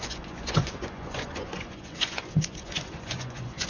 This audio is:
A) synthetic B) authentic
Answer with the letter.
A